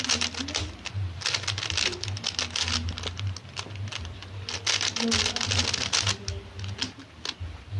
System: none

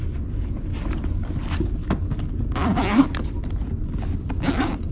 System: none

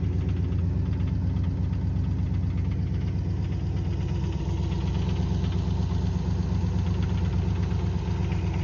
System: none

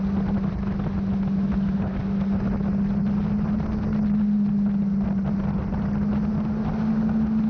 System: none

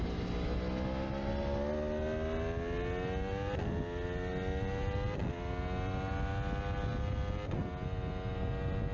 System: none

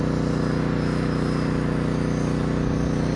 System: none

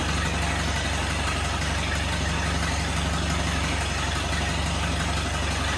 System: none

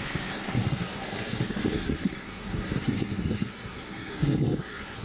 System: codec, SNAC